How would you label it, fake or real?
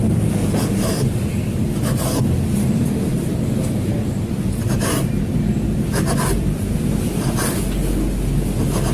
real